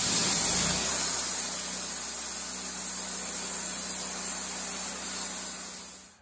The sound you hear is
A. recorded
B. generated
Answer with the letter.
A